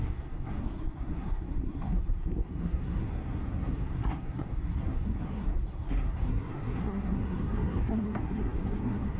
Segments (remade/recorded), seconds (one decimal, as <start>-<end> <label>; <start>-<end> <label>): 0.0-9.2 remade